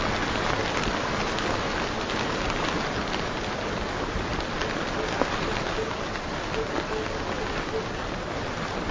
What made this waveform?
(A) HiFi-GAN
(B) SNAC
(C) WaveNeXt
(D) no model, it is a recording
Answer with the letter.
D